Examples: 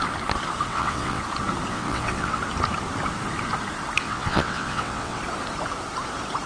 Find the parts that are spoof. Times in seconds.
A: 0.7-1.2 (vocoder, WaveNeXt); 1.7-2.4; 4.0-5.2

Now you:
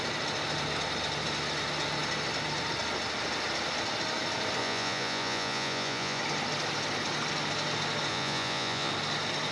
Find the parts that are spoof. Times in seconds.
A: 4.6-6.2 (vocoder, Vocos); 8.1-8.9